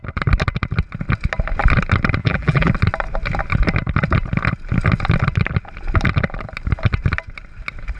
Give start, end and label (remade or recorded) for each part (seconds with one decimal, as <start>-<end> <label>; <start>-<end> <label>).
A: 0.0-2.2 recorded; 2.2-2.7 remade; 2.7-8.0 recorded